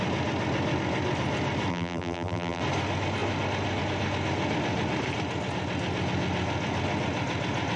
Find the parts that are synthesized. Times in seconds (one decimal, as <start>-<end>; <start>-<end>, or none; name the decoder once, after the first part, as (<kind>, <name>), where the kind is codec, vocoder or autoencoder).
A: 1.7-2.6 (vocoder, BigVGAN v2)